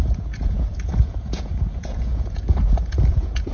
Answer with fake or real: fake